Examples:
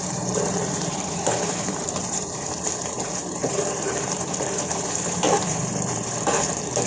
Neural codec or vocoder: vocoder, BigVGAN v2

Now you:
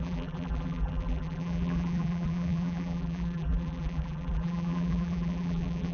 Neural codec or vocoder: vocoder, BigVGAN v2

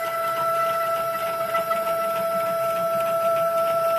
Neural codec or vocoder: vocoder, BigVGAN v2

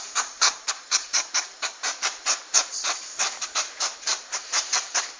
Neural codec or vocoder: vocoder, BigVGAN v2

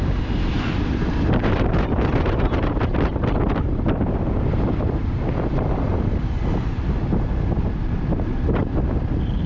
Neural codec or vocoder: vocoder, BigVGAN v2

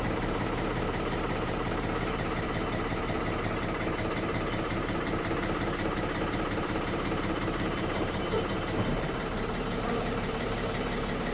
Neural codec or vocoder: vocoder, BigVGAN v2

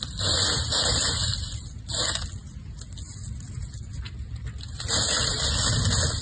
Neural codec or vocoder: none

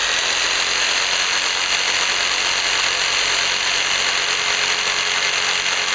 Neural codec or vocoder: none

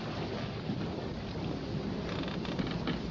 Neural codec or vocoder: none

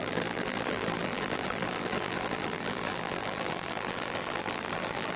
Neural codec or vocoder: vocoder, BigVGAN v2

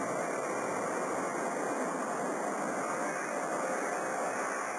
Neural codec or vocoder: none